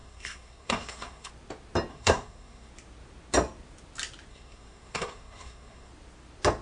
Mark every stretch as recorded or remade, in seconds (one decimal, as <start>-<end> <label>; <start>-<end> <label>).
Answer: 0.0-1.3 remade; 1.3-1.9 recorded; 1.9-2.7 remade; 2.7-4.3 recorded; 4.3-5.9 remade; 5.9-6.6 recorded